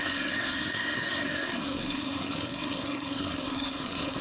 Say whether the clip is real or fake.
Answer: fake